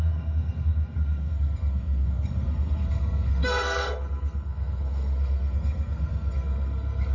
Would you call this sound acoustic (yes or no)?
no